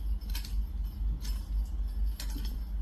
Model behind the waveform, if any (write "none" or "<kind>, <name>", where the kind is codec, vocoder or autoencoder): none